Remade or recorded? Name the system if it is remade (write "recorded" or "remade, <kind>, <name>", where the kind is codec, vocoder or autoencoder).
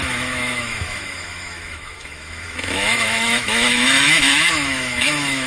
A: remade, autoencoder, DAC-VAE